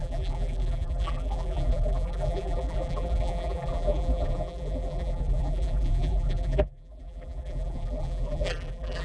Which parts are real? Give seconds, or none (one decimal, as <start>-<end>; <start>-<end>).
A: none

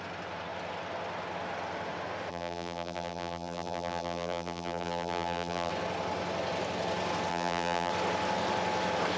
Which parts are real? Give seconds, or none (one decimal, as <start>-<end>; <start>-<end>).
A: 0.0-2.3; 5.7-7.3; 7.9-9.2